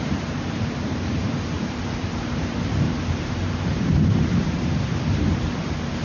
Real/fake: fake